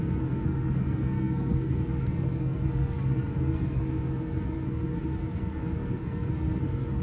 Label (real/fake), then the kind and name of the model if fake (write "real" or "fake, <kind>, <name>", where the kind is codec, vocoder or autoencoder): fake, codec, SNAC